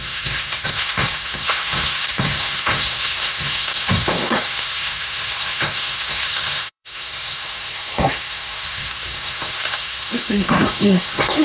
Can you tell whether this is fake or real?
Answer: fake